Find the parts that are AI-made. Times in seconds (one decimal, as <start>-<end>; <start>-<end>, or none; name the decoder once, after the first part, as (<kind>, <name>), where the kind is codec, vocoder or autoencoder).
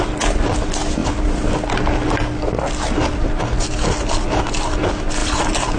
none